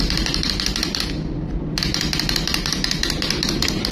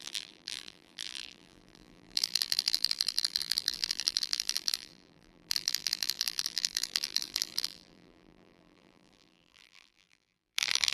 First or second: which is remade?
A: second